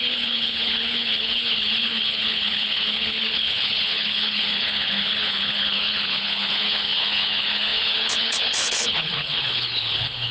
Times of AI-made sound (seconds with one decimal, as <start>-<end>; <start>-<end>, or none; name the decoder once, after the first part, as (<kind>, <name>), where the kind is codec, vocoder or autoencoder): 0.0-10.3 (codec, HILCodec)